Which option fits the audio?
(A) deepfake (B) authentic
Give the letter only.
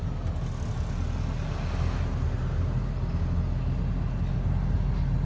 B